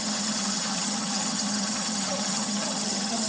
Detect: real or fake fake